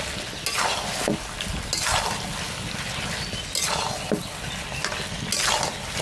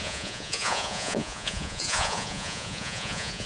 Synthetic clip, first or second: second